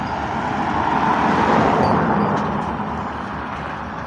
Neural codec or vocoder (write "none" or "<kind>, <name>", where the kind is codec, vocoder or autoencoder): none